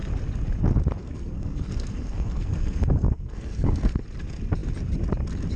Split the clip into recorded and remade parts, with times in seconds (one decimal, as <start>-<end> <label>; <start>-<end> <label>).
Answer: 0.0-1.0 recorded; 1.0-4.0 remade; 4.0-5.6 recorded